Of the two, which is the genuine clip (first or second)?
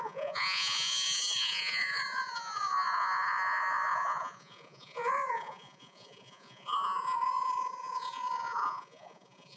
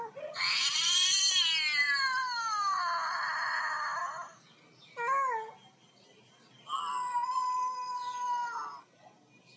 second